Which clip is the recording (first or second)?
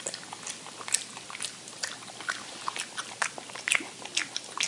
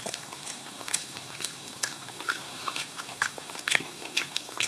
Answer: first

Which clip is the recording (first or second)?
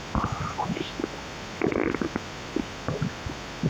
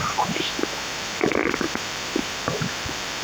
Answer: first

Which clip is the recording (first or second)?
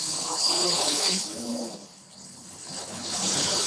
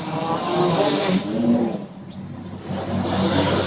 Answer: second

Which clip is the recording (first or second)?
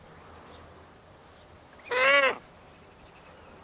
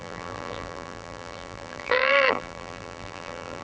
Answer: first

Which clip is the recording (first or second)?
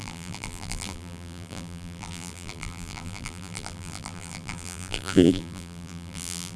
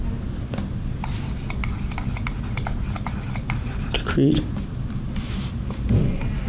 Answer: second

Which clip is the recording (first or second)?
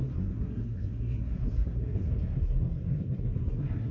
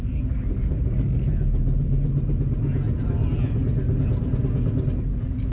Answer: second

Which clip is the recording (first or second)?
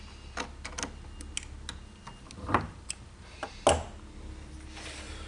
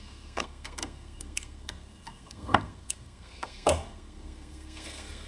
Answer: first